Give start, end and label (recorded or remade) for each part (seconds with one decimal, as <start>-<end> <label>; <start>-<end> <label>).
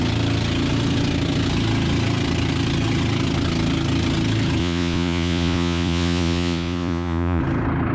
0.0-4.6 recorded; 4.6-7.4 remade; 7.4-7.9 recorded